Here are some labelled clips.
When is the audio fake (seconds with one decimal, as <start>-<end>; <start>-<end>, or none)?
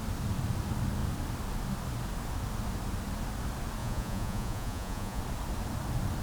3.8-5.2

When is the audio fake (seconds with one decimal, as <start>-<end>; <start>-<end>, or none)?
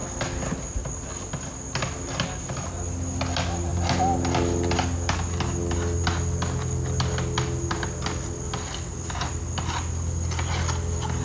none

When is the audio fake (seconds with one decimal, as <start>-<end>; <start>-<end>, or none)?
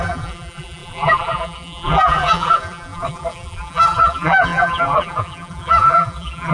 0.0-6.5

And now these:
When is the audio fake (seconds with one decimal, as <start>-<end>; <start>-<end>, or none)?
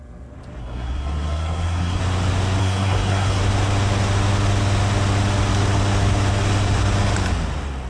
0.6-2.0; 2.6-3.4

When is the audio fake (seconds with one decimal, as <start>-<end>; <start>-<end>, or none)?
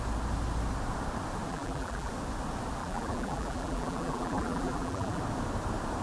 1.5-2.1; 2.8-5.2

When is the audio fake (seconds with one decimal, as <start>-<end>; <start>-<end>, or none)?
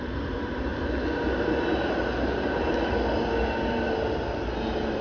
none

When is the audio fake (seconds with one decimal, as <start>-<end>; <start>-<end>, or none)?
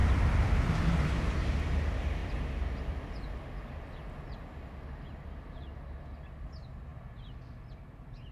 1.6-2.2; 6.4-6.9